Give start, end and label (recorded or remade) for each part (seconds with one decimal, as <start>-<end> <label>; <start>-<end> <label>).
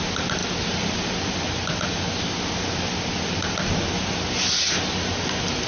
0.0-5.7 recorded